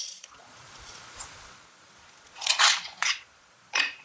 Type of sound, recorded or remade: remade